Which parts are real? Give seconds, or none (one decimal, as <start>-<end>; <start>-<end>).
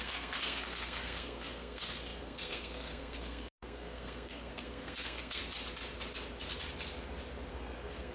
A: 5.4-7.5